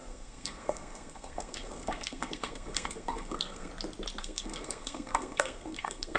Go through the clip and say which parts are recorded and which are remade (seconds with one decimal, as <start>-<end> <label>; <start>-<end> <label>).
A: 0.0-3.7 remade; 3.7-4.2 recorded; 4.2-6.2 remade